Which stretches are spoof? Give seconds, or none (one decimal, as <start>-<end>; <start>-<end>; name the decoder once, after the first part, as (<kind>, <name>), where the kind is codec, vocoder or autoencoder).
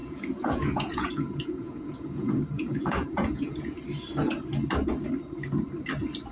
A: 0.0-3.8 (vocoder, Vocos)